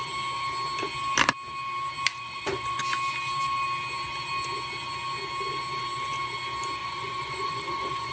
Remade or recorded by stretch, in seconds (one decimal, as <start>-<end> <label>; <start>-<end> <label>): 0.0-2.1 recorded; 2.1-2.8 remade; 2.8-6.8 recorded; 6.8-8.1 remade